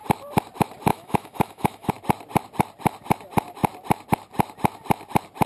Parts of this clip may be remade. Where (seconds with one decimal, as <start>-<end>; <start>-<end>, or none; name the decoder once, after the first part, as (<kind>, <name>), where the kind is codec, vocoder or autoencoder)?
0.9-1.9 (autoencoder, DAC-VAE)